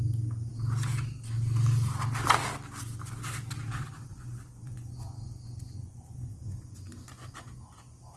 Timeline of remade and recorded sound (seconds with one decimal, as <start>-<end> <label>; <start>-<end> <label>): 0.0-4.1 recorded; 4.1-8.2 remade